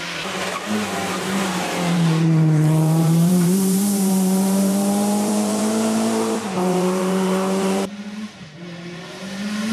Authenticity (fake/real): fake